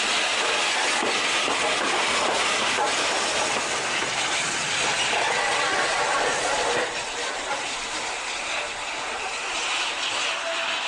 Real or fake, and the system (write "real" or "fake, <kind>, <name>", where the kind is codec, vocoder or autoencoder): real